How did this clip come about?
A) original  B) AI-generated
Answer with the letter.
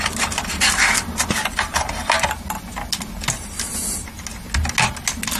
A